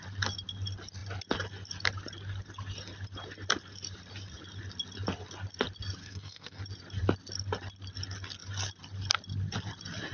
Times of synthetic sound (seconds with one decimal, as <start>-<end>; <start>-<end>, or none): 6.0-6.6